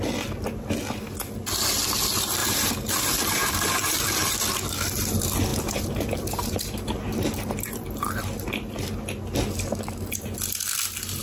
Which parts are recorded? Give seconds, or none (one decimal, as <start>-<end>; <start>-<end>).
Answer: 0.0-2.4; 3.0-3.4; 4.3-5.5; 8.1-11.2